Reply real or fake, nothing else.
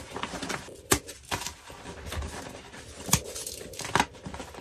fake